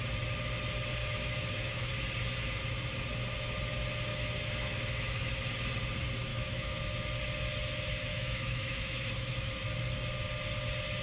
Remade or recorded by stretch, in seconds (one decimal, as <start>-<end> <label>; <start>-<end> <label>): 0.0-1.0 recorded; 1.0-1.9 remade; 1.9-4.1 recorded; 4.1-5.4 remade; 5.4-6.3 recorded; 6.3-6.8 remade; 6.8-8.1 recorded; 8.1-9.5 remade; 9.5-11.0 recorded